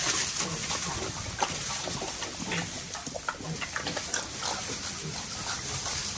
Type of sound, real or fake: real